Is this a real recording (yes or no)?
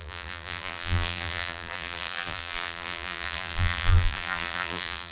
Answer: no